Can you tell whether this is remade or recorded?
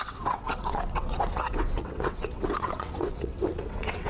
remade